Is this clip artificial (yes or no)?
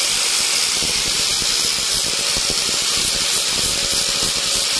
no